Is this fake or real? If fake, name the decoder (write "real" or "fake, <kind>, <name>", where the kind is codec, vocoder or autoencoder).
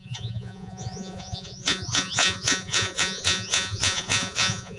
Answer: fake, vocoder, Vocos